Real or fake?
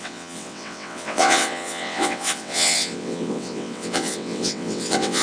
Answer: fake